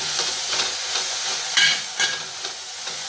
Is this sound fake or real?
fake